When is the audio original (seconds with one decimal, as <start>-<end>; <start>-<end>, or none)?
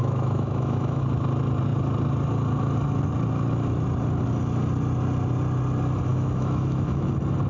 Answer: 1.0-6.1; 7.1-7.5